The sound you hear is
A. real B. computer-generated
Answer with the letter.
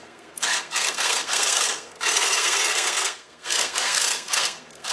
B